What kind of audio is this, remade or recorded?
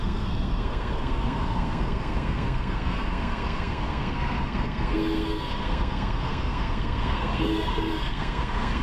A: remade